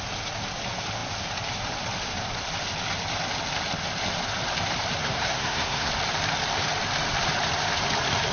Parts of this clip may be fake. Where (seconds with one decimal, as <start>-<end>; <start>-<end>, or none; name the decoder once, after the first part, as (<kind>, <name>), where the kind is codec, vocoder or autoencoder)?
5.0-5.9 (codec, SNAC)